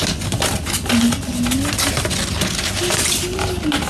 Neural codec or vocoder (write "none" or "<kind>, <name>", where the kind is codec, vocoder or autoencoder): none